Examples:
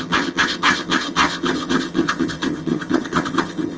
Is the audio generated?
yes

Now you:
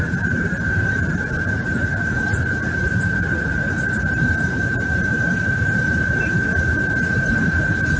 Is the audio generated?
no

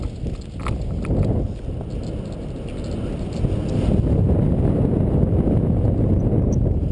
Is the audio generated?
no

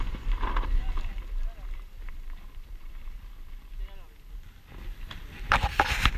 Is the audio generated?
no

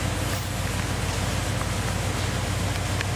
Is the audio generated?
no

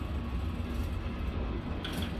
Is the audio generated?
no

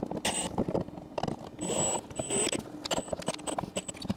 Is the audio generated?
no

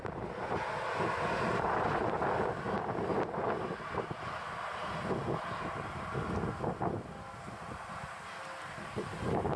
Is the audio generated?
no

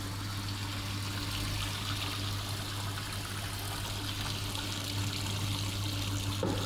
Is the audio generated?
no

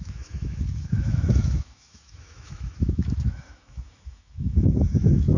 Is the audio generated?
yes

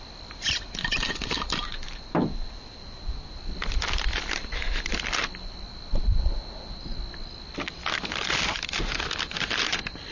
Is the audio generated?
no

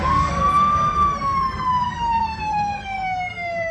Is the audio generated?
yes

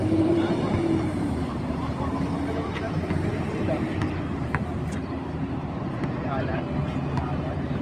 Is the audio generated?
yes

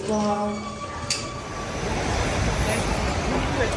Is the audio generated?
no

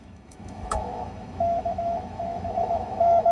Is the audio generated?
yes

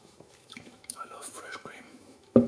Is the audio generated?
yes